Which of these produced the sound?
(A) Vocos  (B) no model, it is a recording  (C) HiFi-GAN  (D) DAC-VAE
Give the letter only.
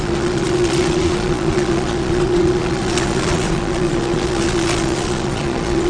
A